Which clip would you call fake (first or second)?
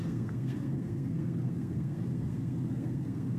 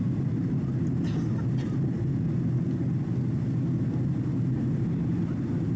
first